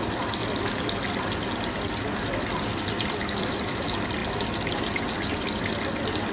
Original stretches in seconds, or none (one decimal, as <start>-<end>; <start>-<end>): 0.4-3.4

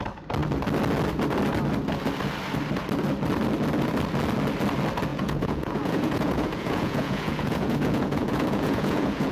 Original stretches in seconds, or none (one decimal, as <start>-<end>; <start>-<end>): 0.0-5.1

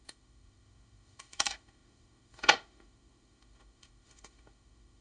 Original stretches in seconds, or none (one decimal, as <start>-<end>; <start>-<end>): none

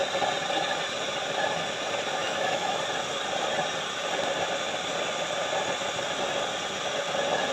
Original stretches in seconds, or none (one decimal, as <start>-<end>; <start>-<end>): 0.0-2.2; 2.8-7.5

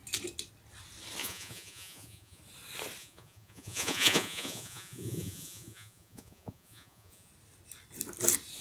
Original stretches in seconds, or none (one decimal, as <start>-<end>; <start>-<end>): 0.0-1.2; 2.4-3.0; 7.3-8.6

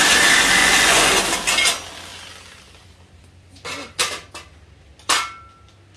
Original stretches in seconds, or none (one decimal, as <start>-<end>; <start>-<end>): 0.0-0.6; 1.2-6.0

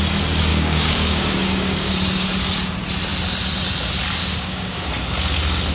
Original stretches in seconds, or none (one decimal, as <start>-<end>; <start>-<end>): 0.0-0.5; 1.9-4.2; 4.9-5.7

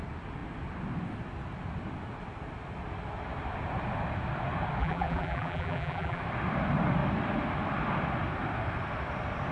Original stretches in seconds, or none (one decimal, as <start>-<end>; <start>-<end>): 0.0-4.8; 6.2-9.5